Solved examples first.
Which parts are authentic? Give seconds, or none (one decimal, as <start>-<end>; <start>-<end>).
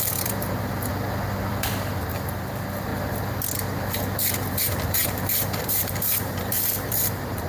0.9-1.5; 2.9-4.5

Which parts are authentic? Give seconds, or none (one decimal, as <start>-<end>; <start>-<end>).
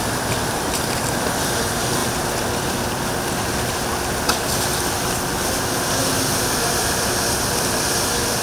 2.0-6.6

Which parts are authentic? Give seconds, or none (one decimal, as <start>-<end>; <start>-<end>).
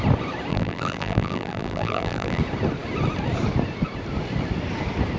0.0-0.5; 2.4-5.2